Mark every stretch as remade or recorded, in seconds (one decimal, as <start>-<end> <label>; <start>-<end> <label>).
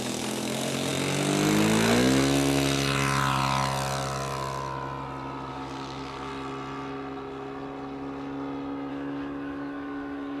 0.0-0.9 remade; 0.9-5.5 recorded; 5.5-6.3 remade; 6.3-8.9 recorded; 8.9-10.4 remade